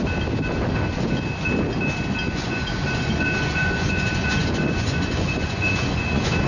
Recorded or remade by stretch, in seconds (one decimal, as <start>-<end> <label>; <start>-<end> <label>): 0.0-2.3 recorded; 2.3-6.5 remade